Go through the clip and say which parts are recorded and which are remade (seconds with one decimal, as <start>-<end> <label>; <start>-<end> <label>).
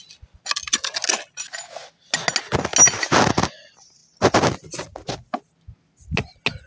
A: 0.0-6.7 recorded